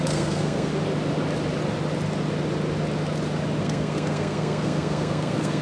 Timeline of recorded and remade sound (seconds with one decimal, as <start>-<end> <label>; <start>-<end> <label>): 0.0-0.7 remade; 0.7-3.6 recorded; 3.6-5.6 remade